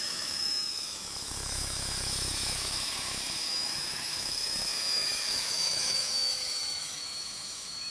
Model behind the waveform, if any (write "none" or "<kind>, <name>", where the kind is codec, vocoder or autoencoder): autoencoder, DAC-VAE